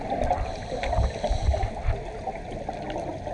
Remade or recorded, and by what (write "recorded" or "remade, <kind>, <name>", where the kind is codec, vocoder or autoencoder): recorded